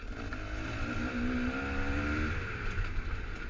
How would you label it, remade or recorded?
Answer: recorded